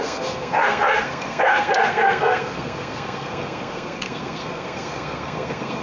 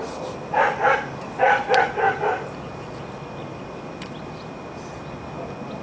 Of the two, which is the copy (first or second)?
first